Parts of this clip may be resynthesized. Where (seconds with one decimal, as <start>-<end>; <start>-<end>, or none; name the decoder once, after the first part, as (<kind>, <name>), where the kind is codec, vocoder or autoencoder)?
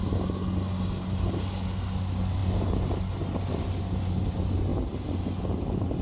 none